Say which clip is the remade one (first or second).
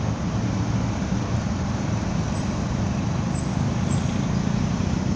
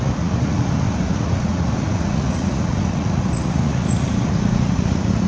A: second